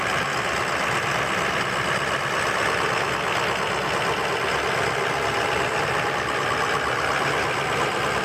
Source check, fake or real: real